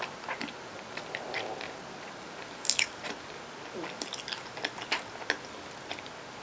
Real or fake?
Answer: real